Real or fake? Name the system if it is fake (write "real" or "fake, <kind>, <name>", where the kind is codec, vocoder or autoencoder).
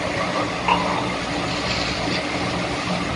real